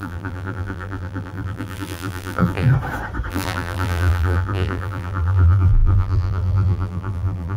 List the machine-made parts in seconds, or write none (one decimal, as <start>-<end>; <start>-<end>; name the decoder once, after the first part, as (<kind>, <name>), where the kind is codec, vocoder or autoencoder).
0.0-2.7 (vocoder, BigVGAN v2); 3.3-7.6